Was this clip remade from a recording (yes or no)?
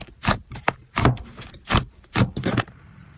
yes